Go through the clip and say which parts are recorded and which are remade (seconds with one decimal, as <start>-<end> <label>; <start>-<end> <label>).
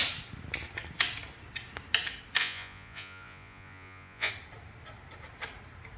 0.0-2.4 recorded; 2.4-4.3 remade; 4.3-6.0 recorded